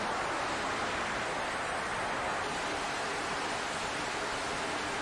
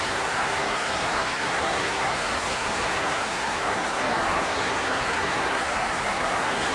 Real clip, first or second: first